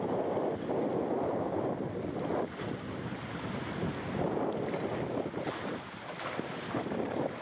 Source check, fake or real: real